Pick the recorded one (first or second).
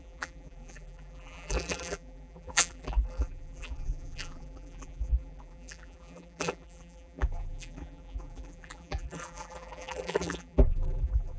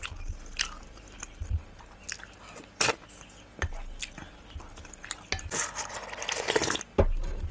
second